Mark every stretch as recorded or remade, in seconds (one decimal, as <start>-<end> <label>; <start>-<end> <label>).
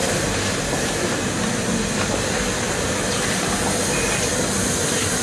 0.0-5.2 recorded